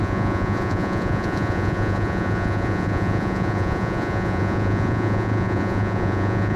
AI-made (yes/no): yes